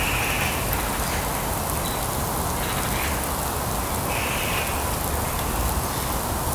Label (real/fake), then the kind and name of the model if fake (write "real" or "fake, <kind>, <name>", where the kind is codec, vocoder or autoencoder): real